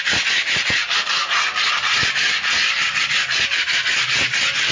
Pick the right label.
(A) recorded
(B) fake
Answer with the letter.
A